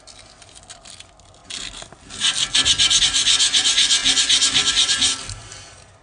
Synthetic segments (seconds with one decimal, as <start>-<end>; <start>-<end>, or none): none